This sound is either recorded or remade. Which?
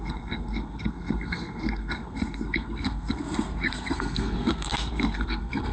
remade